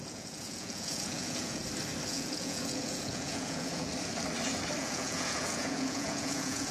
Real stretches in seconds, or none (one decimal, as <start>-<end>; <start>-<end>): 1.6-2.1; 3.9-4.8